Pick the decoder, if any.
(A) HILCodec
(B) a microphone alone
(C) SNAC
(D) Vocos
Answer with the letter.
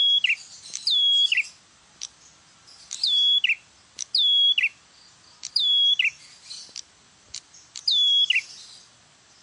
B